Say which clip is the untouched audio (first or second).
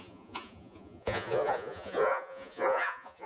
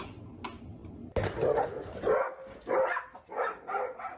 second